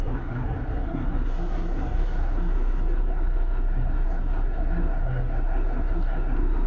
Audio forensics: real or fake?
fake